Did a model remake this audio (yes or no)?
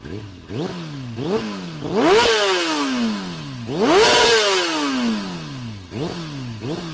no